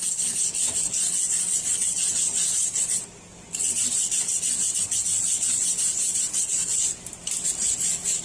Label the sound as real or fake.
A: real